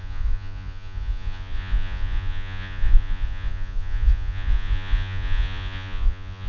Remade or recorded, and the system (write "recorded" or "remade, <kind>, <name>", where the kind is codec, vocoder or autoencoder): remade, vocoder, Vocos